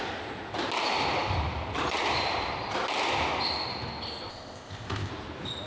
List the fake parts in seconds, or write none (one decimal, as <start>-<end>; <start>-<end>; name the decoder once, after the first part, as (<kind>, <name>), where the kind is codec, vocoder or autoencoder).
4.3-5.1 (codec, ZipCodec)